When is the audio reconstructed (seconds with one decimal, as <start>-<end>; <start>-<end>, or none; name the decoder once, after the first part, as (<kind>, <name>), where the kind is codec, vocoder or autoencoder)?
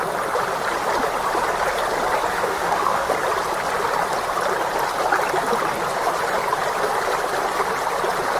2.3-3.1 (autoencoder, DAC-VAE)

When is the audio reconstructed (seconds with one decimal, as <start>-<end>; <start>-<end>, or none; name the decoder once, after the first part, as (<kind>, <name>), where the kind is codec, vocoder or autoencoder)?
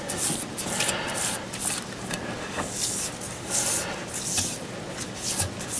none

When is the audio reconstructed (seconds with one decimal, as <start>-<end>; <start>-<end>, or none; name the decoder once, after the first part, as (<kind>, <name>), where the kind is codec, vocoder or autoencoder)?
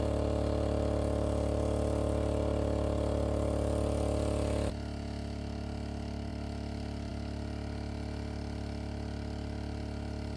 none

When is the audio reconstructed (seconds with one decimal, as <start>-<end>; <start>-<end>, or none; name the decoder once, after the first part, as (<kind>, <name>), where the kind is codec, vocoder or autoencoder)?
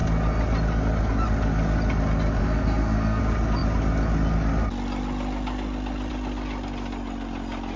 2.4-3.2 (codec, SNAC)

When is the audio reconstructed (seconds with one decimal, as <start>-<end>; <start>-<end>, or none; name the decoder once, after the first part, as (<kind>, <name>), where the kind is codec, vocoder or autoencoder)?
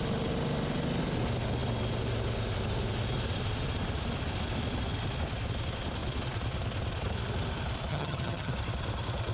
7.9-8.5 (vocoder, HiFi-GAN)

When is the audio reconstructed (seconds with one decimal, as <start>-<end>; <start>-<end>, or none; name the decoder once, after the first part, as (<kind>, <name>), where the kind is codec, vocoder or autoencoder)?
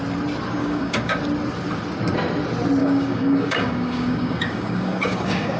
0.6-1.2 (codec, DAC); 2.8-5.6